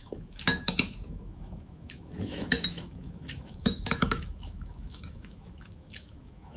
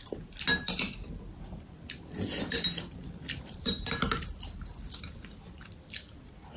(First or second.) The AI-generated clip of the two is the first